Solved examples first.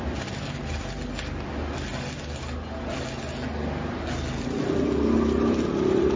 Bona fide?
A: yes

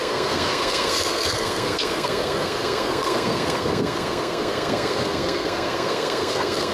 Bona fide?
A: no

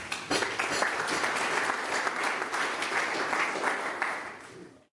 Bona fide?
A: yes